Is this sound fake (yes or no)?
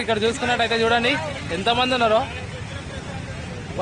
no